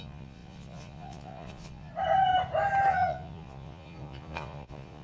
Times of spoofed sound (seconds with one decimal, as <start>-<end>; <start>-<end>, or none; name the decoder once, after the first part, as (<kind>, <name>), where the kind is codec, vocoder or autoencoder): 0.0-1.9 (vocoder, Vocos); 2.9-5.0